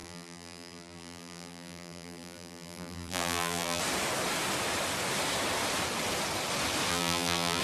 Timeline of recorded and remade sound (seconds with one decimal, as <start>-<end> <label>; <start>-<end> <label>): 0.0-3.8 remade; 3.8-6.9 recorded; 6.9-7.6 remade

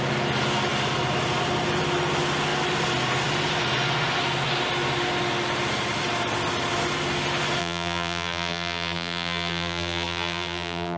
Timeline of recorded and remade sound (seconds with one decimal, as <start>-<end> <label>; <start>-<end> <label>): 0.0-7.6 recorded; 7.6-11.0 remade

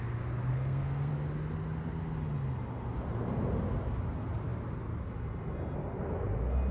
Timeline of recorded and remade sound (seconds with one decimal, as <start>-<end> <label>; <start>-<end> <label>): 0.0-0.5 recorded; 0.5-1.1 remade; 1.1-6.7 recorded

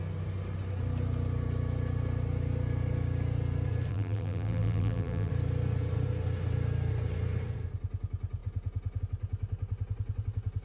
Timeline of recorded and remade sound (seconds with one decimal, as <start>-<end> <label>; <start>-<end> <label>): 0.0-3.9 recorded; 3.9-5.3 remade; 5.3-10.6 recorded

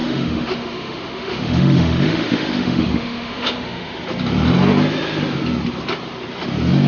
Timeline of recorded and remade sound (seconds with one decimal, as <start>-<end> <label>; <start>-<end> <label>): 0.0-4.0 remade; 4.0-6.9 recorded

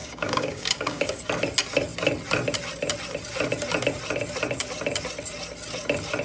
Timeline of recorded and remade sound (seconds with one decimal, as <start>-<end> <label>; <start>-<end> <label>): 0.0-1.2 remade; 1.2-6.2 recorded

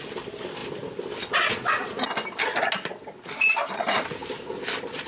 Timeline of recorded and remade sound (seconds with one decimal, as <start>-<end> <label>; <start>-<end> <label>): 0.0-5.1 recorded